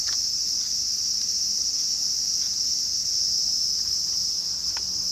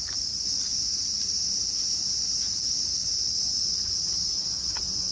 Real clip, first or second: first